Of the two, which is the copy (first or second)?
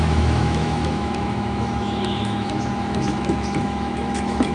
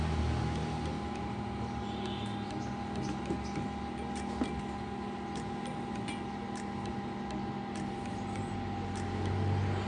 first